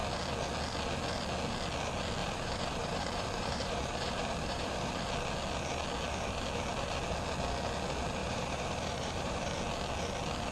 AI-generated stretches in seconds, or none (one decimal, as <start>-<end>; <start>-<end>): 2.2-5.1; 8.2-9.5